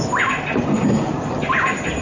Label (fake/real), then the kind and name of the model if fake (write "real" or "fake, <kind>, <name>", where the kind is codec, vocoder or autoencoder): real